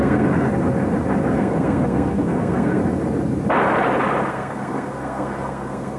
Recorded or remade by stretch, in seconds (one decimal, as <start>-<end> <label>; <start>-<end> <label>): 0.0-0.5 remade; 0.5-1.3 recorded; 1.3-2.8 remade; 2.8-4.3 recorded; 4.3-6.0 remade